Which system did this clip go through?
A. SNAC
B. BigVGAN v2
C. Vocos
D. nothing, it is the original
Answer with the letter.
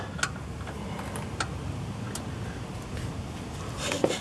D